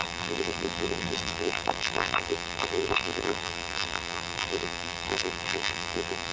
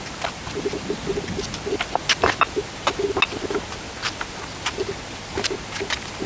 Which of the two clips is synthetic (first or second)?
first